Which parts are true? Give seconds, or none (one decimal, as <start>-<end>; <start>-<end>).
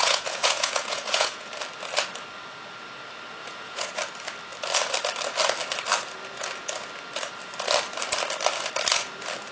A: 1.5-3.4; 4.0-9.5